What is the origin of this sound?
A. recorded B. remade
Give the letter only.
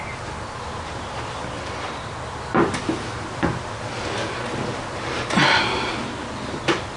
A